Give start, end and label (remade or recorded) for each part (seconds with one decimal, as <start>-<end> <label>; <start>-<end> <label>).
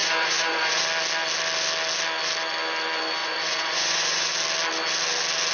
0.0-0.8 remade; 0.8-3.2 recorded; 3.2-4.3 remade; 4.3-5.5 recorded